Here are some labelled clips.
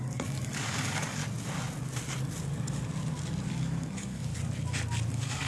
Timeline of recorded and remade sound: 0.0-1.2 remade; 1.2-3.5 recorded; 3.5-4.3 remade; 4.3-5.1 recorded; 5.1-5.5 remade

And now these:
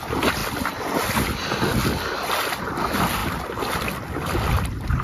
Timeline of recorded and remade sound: 0.0-5.0 recorded

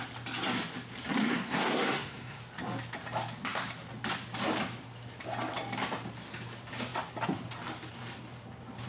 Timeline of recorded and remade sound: 0.0-1.2 recorded; 1.2-2.4 remade; 2.4-8.9 recorded

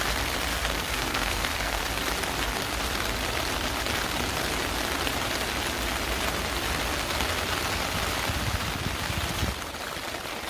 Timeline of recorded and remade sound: 0.0-0.5 recorded; 0.5-1.8 remade; 1.8-10.5 recorded

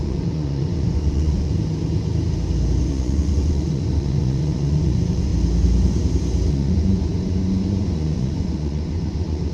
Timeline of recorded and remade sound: 0.0-1.5 remade; 1.5-2.9 recorded; 2.9-5.3 remade; 5.3-6.5 recorded; 6.5-9.5 remade

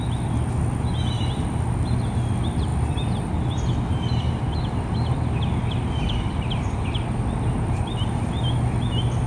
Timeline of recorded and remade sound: 0.0-9.3 recorded

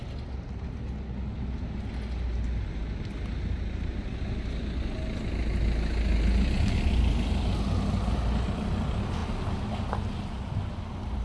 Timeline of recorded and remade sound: 0.0-11.2 recorded

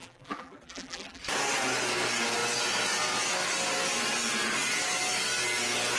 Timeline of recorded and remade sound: 0.0-1.2 remade; 1.2-6.0 recorded